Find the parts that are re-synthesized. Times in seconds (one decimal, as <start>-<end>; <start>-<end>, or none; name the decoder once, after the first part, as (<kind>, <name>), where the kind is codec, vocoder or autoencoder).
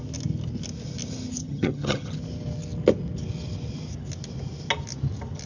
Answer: 1.4-2.1 (vocoder, HiFi-GAN)